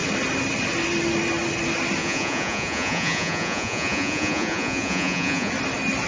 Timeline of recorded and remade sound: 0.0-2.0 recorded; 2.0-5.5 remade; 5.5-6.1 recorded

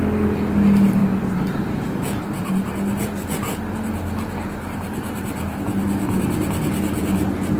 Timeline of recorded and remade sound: 0.0-5.5 recorded; 5.5-6.2 remade; 6.2-7.6 recorded

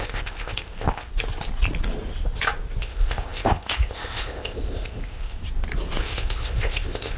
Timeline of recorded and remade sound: 0.0-1.1 remade; 1.1-2.8 recorded; 2.8-5.4 remade; 5.4-6.0 recorded; 6.0-7.2 remade

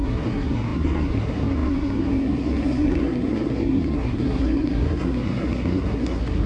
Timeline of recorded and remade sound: 0.0-6.5 remade

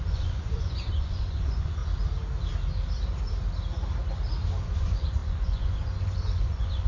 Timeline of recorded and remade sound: 0.0-1.8 remade; 1.8-4.6 recorded; 4.6-6.9 remade